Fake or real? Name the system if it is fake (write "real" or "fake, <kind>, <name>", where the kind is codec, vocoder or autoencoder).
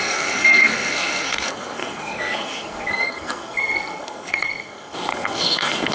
fake, codec, SNAC